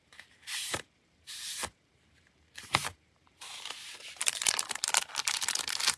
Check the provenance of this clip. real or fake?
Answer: fake